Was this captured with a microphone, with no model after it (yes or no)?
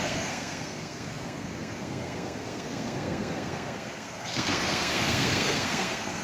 no